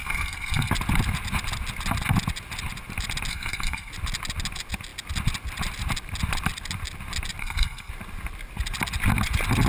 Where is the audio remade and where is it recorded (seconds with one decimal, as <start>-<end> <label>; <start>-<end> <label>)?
0.0-0.7 remade; 0.7-3.3 recorded; 3.3-3.9 remade; 3.9-7.4 recorded; 7.4-7.9 remade; 7.9-9.7 recorded